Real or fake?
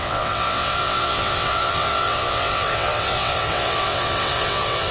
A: fake